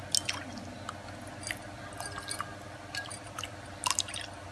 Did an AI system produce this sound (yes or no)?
no